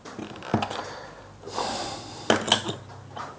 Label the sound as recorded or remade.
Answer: recorded